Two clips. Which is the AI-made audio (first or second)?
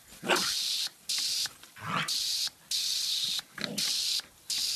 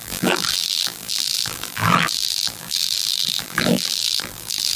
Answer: second